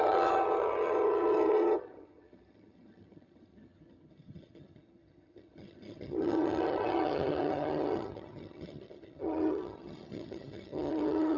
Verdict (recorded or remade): remade